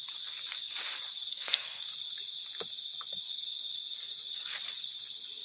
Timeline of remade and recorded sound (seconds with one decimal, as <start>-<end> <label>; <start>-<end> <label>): 0.0-1.3 recorded; 1.3-1.8 remade; 1.8-5.4 recorded